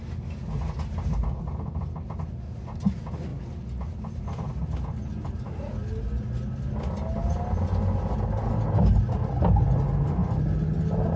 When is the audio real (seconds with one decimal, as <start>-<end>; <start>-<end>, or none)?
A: 0.0-11.2